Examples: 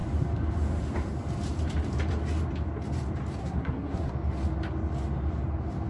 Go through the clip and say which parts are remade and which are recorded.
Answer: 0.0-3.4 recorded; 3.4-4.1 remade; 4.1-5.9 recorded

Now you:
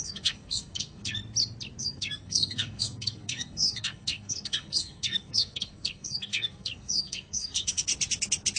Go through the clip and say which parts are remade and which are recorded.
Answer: 0.0-1.2 remade; 1.2-1.8 recorded; 1.8-7.9 remade; 7.9-8.6 recorded

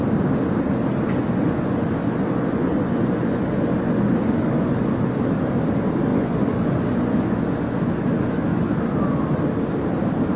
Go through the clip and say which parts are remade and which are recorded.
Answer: 0.0-1.2 recorded; 1.2-4.9 remade; 4.9-6.1 recorded; 6.1-8.8 remade; 8.8-10.4 recorded